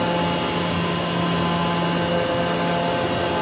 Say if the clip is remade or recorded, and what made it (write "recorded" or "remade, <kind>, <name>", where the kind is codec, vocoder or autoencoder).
recorded